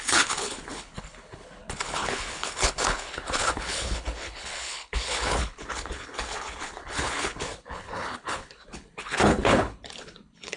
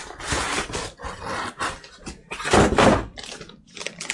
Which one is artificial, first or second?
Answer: first